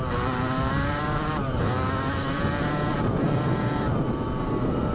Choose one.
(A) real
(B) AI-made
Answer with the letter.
B